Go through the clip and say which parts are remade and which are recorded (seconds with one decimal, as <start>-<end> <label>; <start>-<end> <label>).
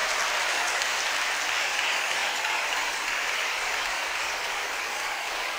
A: 0.0-0.5 recorded; 0.5-1.0 remade; 1.0-1.5 recorded; 1.5-5.6 remade